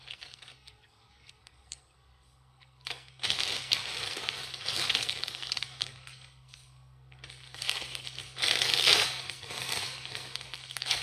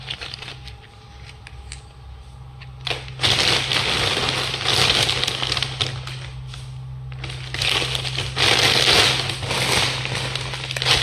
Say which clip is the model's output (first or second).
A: first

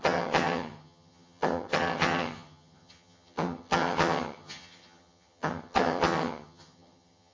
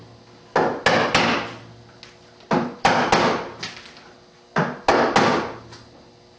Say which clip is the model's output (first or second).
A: first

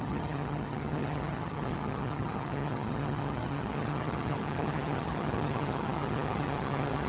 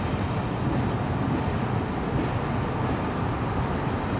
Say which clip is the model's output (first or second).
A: first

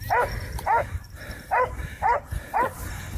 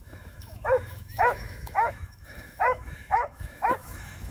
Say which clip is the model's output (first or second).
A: second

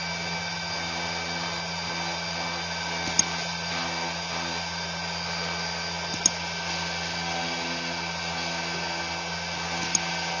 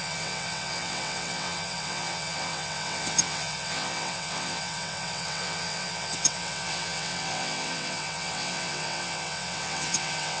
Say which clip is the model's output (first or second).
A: second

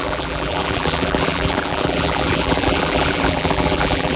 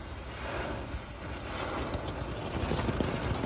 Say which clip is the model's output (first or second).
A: first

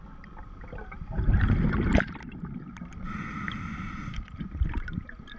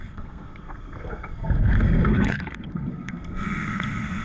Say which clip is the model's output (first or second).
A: second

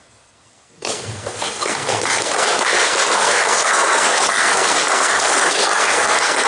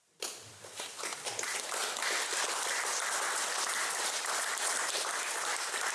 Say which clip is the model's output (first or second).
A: first